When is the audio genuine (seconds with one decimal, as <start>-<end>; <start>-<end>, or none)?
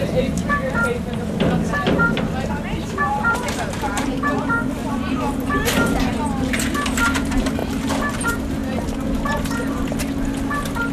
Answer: 4.8-7.0; 7.6-8.2; 8.6-10.9